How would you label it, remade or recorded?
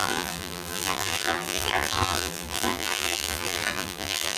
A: remade